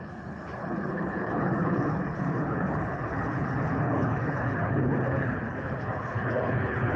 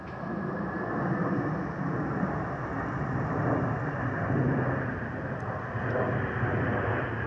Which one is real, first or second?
second